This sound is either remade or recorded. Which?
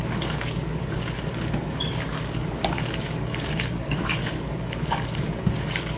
remade